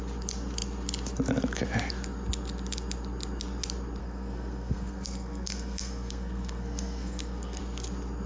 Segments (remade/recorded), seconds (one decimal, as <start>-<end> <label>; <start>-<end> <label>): 0.0-4.0 recorded; 4.0-7.6 remade; 7.6-8.3 recorded